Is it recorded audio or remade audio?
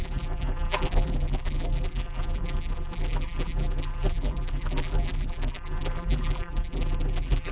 remade